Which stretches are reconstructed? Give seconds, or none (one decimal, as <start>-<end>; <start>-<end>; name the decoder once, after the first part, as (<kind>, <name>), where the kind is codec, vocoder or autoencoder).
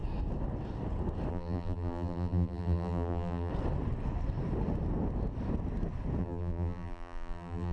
1.3-3.5 (vocoder, BigVGAN v2); 6.2-7.7